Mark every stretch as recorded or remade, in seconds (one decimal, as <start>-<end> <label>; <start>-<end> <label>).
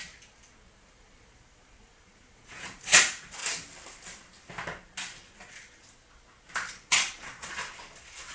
0.0-0.8 recorded; 0.8-3.4 remade; 3.4-6.7 recorded; 6.7-7.6 remade; 7.6-8.3 recorded